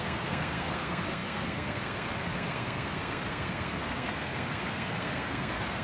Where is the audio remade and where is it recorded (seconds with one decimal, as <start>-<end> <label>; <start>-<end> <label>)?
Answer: 0.0-5.8 remade